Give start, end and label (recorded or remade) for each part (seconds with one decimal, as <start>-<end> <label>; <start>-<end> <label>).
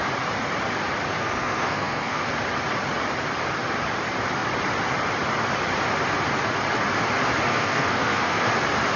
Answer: 0.0-1.2 recorded; 1.2-2.3 remade; 2.3-7.5 recorded; 7.5-8.5 remade; 8.5-9.0 recorded